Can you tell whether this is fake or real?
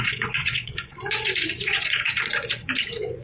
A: fake